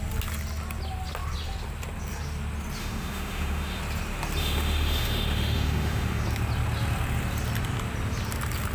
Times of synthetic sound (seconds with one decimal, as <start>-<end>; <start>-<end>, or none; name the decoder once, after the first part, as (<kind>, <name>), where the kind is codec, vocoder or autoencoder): 2.8-3.8 (autoencoder, DAC-VAE); 4.4-6.2